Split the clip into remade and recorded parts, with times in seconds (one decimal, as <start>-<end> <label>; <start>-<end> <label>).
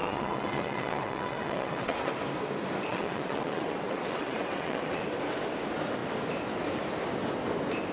0.0-2.1 remade; 2.1-2.9 recorded; 2.9-5.0 remade; 5.0-7.9 recorded